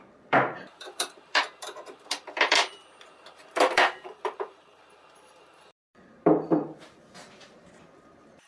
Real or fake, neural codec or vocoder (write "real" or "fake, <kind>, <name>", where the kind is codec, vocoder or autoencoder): fake, vocoder, BigVGAN v2